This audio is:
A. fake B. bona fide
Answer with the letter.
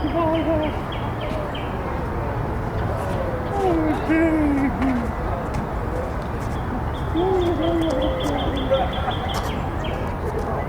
B